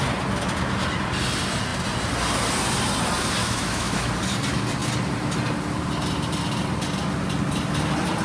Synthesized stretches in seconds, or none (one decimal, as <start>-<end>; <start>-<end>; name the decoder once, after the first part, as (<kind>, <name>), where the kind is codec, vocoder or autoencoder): 3.4-4.1 (autoencoder, DAC-VAE)